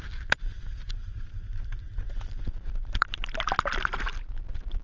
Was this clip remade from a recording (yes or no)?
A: yes